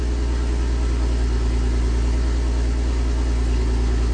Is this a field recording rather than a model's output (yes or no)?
yes